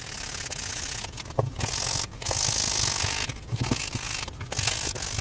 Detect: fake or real real